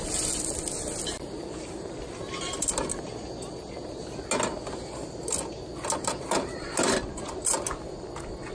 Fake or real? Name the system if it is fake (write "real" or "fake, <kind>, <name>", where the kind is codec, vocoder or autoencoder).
real